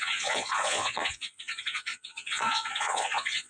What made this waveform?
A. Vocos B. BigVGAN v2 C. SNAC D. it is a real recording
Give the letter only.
A